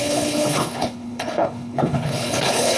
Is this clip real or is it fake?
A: fake